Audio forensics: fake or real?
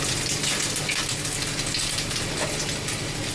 real